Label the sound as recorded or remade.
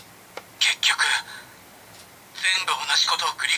recorded